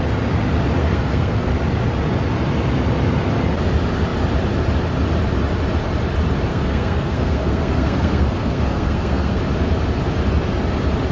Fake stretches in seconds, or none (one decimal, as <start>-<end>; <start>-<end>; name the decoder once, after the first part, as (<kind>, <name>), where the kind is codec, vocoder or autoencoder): 0.8-1.5 (codec, SNAC); 6.5-9.4